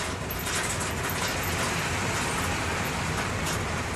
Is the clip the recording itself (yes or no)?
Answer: yes